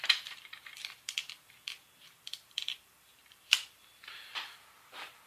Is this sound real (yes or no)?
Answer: no